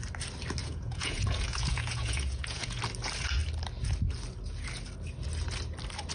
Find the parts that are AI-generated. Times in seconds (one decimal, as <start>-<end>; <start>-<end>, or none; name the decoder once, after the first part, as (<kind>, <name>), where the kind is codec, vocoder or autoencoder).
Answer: 0.6-2.8 (vocoder, Vocos)